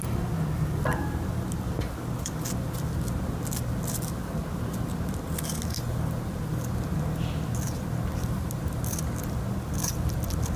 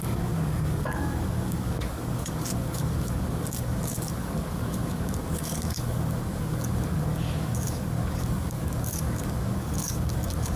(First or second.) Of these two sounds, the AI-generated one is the second